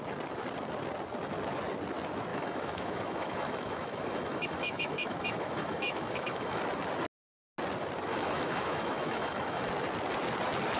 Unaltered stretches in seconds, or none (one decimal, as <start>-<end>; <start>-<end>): 0.0-2.3; 6.6-8.1; 9.7-10.8